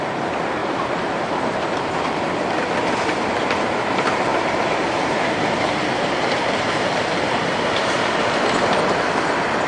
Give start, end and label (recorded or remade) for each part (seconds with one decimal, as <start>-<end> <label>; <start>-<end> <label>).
0.0-0.6 recorded; 0.6-1.9 remade; 1.9-4.3 recorded; 4.3-8.3 remade; 8.3-9.7 recorded